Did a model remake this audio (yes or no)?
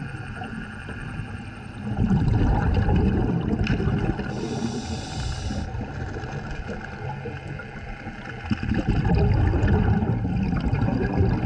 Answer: no